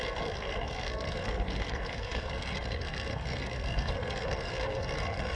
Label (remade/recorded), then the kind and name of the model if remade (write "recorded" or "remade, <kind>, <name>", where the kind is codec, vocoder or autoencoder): remade, codec, SNAC